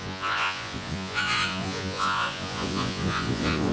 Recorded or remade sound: remade